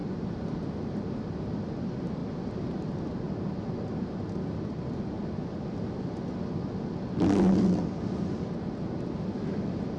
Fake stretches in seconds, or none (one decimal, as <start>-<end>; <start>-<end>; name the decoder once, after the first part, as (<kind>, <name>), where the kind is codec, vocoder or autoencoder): none